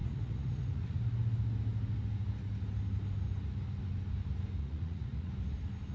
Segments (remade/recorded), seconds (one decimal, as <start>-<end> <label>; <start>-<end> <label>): 0.0-1.0 remade; 1.0-4.6 recorded; 4.6-5.3 remade; 5.3-5.9 recorded